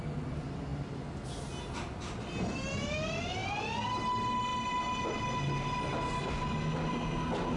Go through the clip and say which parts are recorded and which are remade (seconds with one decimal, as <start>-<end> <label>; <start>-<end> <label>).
0.0-7.6 recorded